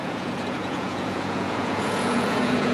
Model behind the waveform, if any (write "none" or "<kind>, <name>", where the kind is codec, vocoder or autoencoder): vocoder, Vocos